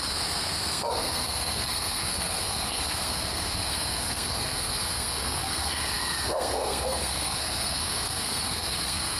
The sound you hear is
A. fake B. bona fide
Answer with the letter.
A